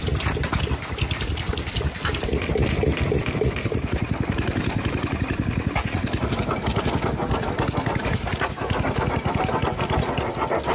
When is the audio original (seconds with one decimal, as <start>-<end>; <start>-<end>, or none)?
0.5-1.5